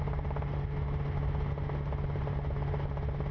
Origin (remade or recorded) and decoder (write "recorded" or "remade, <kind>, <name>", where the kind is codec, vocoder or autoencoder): recorded